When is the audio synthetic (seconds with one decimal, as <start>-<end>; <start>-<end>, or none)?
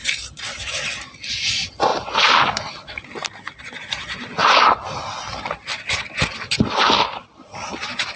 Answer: none